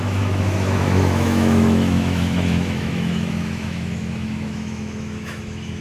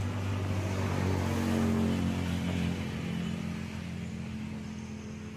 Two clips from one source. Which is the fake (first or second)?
first